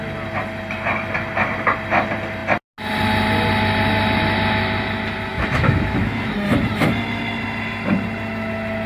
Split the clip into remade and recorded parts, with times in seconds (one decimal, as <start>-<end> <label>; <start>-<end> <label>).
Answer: 0.0-5.3 recorded; 5.3-6.3 remade; 6.3-8.9 recorded